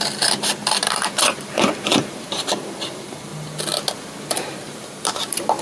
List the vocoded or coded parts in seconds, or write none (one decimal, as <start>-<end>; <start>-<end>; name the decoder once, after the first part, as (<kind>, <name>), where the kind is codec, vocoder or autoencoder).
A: 0.0-3.3 (vocoder, BigVGAN v2); 4.3-5.6